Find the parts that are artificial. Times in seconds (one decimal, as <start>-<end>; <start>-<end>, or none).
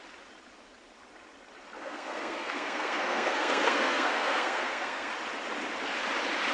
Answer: 1.8-5.1